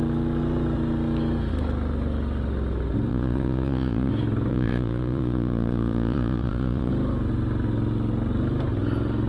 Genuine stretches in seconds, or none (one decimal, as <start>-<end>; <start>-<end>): 0.0-3.1; 4.1-4.5; 6.9-9.3